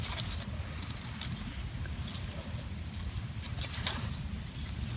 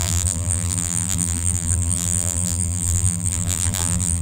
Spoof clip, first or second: second